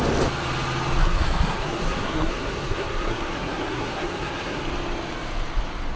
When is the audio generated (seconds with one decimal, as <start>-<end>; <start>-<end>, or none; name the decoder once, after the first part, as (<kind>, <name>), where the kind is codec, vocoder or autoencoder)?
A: 1.0-4.6 (codec, SNAC)